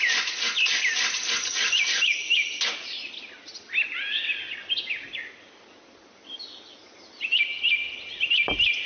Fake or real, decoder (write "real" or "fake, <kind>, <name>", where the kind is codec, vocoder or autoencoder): real